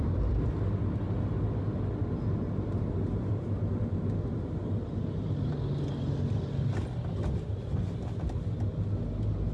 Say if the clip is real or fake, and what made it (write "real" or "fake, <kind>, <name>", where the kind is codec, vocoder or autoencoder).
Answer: real